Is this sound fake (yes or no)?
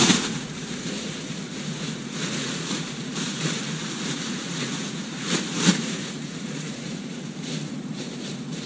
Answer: yes